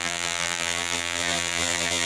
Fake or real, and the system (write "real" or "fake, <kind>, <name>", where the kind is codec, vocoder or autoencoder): fake, vocoder, BigVGAN v2